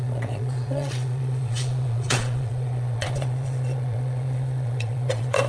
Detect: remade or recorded remade